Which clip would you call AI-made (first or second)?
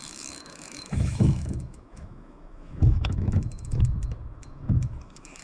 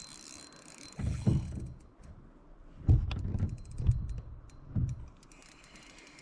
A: first